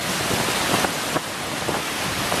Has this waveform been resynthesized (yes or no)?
no